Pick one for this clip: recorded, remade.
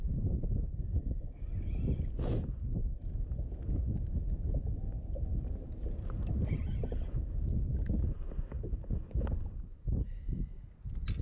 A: recorded